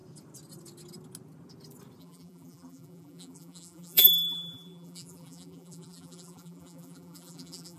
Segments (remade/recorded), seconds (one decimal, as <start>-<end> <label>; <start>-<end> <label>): 0.0-2.0 recorded; 2.0-7.8 remade

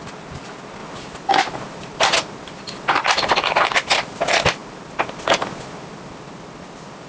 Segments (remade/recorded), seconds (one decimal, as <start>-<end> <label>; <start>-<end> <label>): 0.0-7.1 recorded

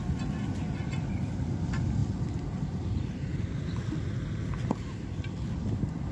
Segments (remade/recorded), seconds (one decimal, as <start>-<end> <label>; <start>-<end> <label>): 0.0-6.1 recorded

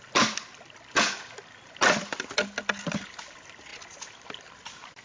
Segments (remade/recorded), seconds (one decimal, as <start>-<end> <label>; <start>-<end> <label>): 0.0-5.0 recorded

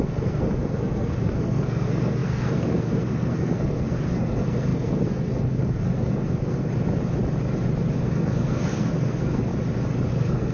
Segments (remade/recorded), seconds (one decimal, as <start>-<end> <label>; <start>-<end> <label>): 0.0-6.7 remade; 6.7-8.0 recorded; 8.0-9.5 remade; 9.5-10.1 recorded; 10.1-10.5 remade

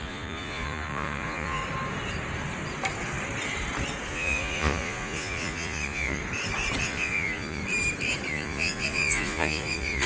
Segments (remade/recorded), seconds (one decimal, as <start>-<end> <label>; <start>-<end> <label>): 0.0-1.6 remade; 1.6-4.1 recorded; 4.1-6.2 remade; 6.2-6.8 recorded; 6.8-7.6 remade; 7.6-8.3 recorded; 8.3-10.1 remade